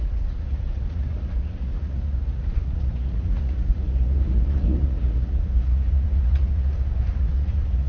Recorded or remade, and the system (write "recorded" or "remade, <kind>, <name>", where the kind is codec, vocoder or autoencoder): remade, vocoder, Vocos